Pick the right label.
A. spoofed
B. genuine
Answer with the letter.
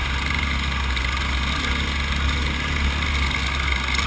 B